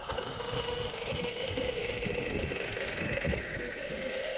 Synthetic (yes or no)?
yes